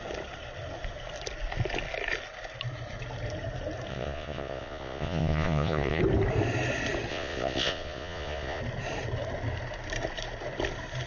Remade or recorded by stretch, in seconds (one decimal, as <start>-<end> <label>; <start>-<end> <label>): 0.0-3.9 recorded; 3.9-6.0 remade; 6.0-7.1 recorded; 7.1-8.6 remade; 8.6-11.1 recorded